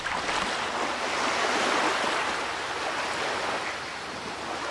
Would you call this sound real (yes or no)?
yes